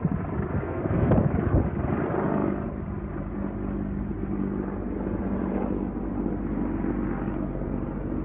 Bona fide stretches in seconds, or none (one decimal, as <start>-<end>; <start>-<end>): 0.0-0.5; 1.1-8.2